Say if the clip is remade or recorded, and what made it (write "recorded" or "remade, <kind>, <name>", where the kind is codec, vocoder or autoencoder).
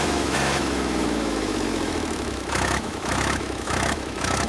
remade, autoencoder, DAC-VAE